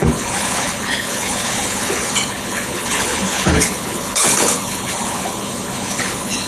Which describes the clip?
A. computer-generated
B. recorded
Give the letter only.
A